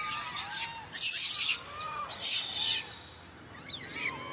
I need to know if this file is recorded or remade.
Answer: recorded